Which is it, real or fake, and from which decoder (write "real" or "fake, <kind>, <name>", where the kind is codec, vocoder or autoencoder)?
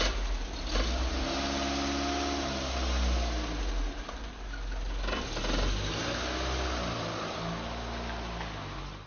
real